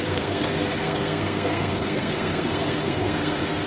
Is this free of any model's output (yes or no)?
no